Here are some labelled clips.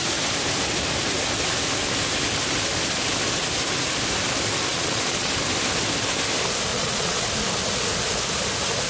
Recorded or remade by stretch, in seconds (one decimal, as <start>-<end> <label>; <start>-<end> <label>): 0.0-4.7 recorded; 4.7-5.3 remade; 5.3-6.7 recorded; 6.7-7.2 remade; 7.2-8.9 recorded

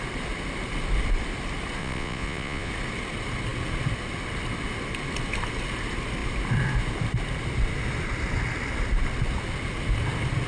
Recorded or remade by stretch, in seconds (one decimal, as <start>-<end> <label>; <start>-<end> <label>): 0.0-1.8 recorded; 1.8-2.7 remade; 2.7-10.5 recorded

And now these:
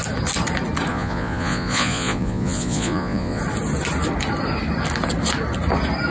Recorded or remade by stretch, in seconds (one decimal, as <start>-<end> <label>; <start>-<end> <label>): 0.0-0.9 recorded; 0.9-3.4 remade; 3.4-6.1 recorded

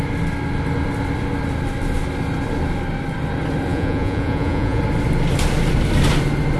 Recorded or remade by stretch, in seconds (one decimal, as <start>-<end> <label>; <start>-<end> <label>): 0.0-3.7 recorded; 3.7-4.8 remade; 4.8-6.6 recorded